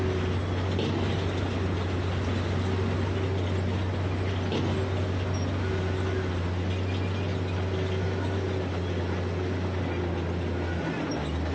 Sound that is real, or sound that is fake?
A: real